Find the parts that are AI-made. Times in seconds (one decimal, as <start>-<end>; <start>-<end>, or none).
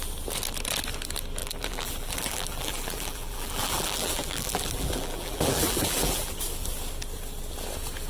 1.4-6.3